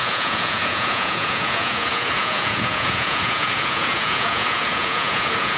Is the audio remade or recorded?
remade